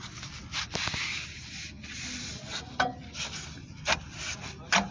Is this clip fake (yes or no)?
no